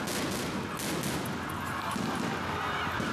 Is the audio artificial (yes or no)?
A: no